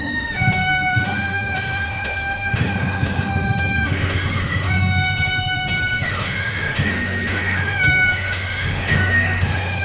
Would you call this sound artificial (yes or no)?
yes